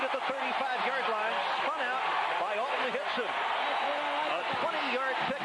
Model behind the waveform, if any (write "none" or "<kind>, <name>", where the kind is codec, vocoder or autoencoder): none